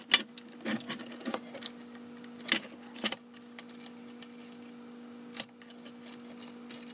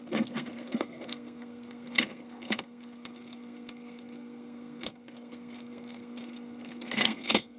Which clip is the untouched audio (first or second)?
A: first